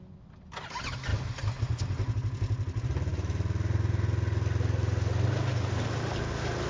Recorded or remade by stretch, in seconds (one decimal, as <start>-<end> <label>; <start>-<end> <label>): 0.0-6.7 recorded

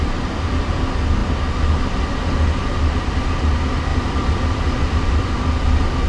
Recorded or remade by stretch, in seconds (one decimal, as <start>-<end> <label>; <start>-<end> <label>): 0.0-3.9 recorded; 3.9-5.3 remade; 5.3-6.1 recorded

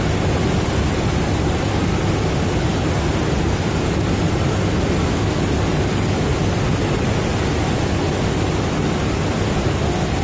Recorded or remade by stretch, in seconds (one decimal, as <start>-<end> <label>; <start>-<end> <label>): 0.0-10.2 recorded

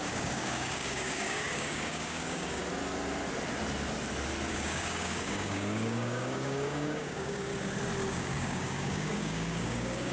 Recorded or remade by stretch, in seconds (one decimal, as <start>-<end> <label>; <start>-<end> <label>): 0.0-2.6 remade; 2.6-4.5 recorded; 4.5-7.5 remade; 7.5-8.1 recorded; 8.1-10.1 remade

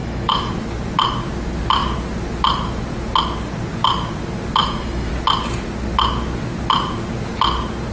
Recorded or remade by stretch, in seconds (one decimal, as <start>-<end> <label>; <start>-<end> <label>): 0.0-0.5 remade; 0.5-4.6 recorded; 4.6-5.1 remade; 5.1-7.9 recorded